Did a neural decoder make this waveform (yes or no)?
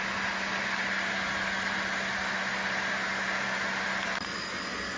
no